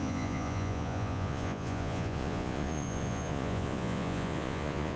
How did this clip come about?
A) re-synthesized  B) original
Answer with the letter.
A